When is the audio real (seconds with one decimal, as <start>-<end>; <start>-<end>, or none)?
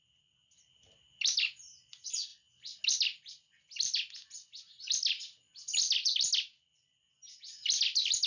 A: 0.0-8.3